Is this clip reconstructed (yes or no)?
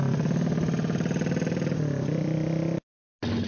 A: no